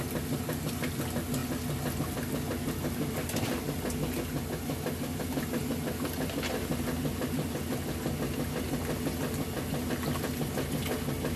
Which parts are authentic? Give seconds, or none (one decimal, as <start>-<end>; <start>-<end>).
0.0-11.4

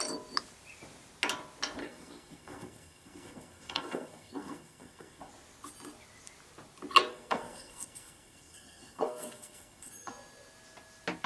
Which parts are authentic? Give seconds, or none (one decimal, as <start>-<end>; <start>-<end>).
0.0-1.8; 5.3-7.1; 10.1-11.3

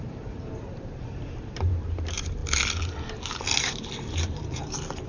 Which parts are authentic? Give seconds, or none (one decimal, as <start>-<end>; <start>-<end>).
2.4-3.6

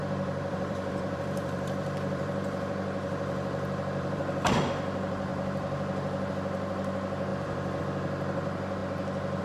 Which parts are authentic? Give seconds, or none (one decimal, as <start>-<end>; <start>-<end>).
4.2-7.3; 7.8-9.4

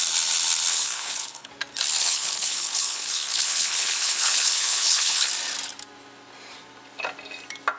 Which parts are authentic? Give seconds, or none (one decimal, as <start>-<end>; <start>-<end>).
0.0-0.7; 1.5-2.0; 5.3-7.8